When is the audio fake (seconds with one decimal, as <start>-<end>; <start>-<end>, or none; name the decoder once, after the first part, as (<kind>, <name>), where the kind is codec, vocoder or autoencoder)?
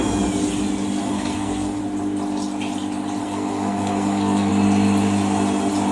1.0-1.8 (codec, SNAC); 3.2-4.5